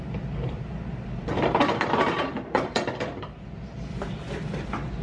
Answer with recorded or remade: remade